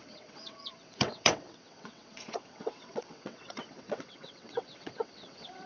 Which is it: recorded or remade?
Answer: remade